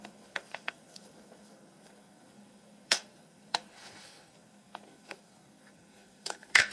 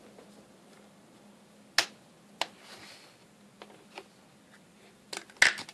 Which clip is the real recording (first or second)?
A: second